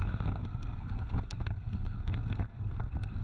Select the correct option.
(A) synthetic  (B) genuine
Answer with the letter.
A